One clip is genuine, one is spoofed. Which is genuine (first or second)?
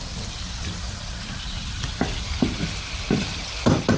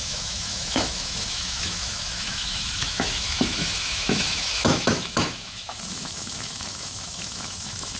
first